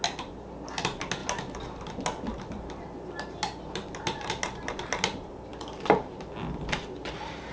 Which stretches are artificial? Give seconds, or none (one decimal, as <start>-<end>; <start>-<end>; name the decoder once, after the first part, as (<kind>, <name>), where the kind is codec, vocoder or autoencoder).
none